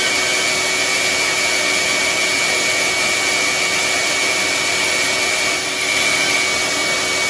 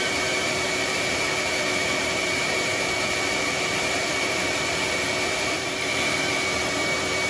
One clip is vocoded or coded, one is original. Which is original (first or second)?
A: first